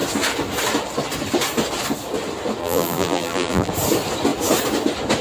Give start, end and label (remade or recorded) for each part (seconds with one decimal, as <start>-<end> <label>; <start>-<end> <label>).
0.0-2.6 recorded; 2.6-3.7 remade; 3.7-5.2 recorded